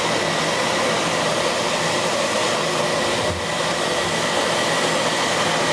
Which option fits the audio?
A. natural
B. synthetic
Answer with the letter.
A